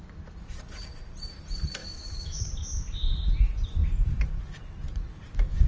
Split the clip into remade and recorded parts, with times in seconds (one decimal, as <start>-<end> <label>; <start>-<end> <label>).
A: 0.0-1.8 recorded; 1.8-2.4 remade; 2.4-5.7 recorded